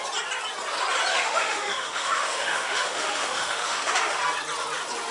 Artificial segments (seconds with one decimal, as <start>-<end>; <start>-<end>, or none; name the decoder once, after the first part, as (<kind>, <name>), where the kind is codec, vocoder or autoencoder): 1.1-4.2 (autoencoder, DAC-VAE)